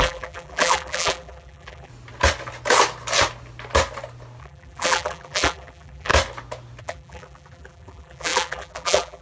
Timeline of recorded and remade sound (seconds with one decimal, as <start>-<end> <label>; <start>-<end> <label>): 0.0-1.9 remade; 1.9-4.4 recorded; 4.4-6.1 remade; 6.1-6.8 recorded; 6.8-9.2 remade

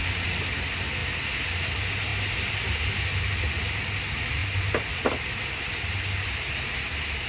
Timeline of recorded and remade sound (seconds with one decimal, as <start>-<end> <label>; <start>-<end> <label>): 0.0-7.3 recorded

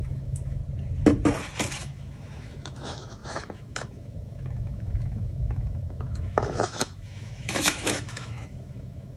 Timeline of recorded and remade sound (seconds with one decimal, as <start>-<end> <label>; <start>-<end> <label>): 0.0-0.6 remade; 0.6-1.8 recorded; 1.8-9.2 remade

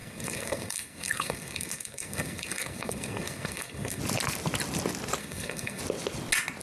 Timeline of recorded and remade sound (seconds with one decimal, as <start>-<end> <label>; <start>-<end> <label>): 0.0-4.0 remade; 4.0-5.2 recorded; 5.2-5.8 remade; 5.8-6.6 recorded

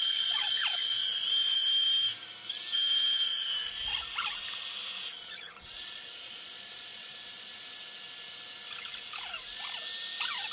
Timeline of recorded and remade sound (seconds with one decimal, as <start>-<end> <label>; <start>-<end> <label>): 0.0-0.5 remade; 0.5-5.2 recorded; 5.2-7.5 remade; 7.5-10.5 recorded

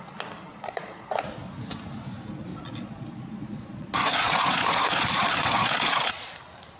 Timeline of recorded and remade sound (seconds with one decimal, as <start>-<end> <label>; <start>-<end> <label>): 0.0-0.5 recorded; 0.5-1.1 remade; 1.1-2.5 recorded; 2.5-6.3 remade; 6.3-6.8 recorded

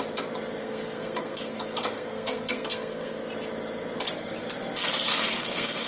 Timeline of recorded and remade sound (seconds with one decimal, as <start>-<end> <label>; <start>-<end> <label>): 0.0-0.6 recorded; 0.6-3.3 remade; 3.3-5.1 recorded; 5.1-5.9 remade

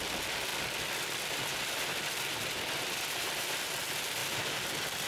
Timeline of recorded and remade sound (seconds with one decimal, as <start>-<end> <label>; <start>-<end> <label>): 0.0-0.5 recorded; 0.5-3.6 remade; 3.6-4.2 recorded; 4.2-5.1 remade